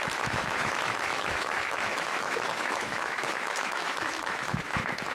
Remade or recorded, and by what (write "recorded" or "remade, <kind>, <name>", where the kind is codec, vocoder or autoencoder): remade, autoencoder, DAC-VAE